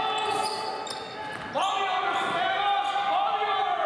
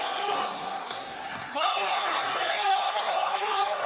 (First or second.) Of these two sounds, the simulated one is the second